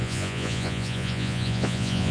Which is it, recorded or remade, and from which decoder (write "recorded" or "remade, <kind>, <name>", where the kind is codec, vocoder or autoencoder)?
remade, vocoder, Vocos